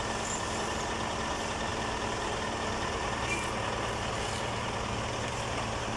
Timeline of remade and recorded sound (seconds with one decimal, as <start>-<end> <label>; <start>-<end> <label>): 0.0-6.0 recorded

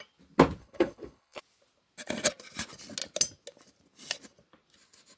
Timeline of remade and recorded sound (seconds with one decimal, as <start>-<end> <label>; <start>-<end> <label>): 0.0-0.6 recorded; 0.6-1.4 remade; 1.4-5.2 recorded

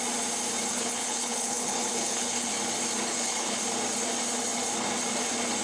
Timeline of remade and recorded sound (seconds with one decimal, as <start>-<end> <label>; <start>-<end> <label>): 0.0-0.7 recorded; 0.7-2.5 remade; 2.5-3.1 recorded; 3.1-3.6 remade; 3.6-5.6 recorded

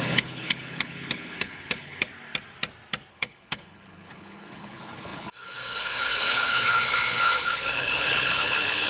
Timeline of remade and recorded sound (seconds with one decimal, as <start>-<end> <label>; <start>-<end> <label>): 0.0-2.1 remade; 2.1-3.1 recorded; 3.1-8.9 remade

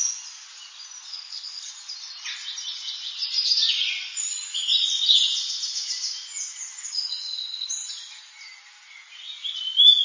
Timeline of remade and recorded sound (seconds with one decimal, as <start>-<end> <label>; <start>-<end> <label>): 0.0-1.1 recorded; 1.1-1.7 remade; 1.7-6.8 recorded; 6.8-7.7 remade; 7.7-10.0 recorded